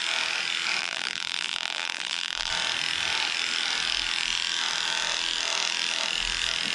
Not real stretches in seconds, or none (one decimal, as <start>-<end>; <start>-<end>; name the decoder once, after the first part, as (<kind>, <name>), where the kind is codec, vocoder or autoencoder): 0.8-2.5 (vocoder, BigVGAN v2)